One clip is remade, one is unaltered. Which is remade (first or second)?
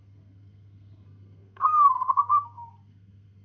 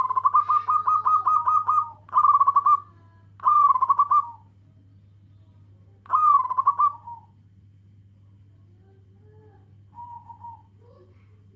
first